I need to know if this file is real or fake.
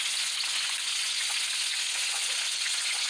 fake